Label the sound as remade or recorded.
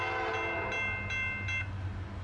recorded